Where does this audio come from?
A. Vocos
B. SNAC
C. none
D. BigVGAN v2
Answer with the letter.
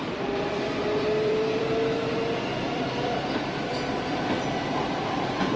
D